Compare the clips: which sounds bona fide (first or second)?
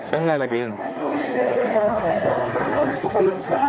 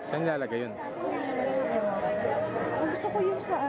second